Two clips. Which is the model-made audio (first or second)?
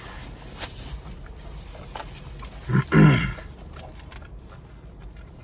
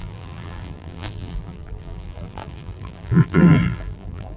second